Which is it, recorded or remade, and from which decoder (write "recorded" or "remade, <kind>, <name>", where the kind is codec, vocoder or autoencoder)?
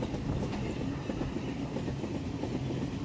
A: recorded